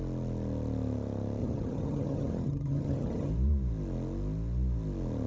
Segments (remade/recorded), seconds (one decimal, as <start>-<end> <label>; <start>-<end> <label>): 0.0-1.4 recorded; 1.4-3.3 remade; 3.3-5.3 recorded